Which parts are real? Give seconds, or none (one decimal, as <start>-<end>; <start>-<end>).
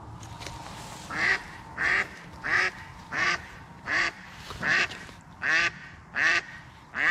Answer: 0.0-1.3; 4.4-7.1